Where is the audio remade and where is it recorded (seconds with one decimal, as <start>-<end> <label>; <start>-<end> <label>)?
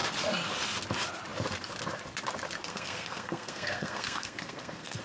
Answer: 0.0-2.7 recorded; 2.7-5.0 remade